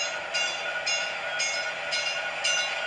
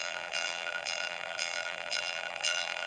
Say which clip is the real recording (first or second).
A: first